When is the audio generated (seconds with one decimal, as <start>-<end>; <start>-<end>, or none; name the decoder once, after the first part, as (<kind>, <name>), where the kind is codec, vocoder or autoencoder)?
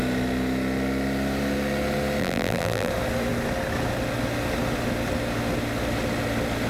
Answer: 2.2-2.9 (vocoder, BigVGAN v2)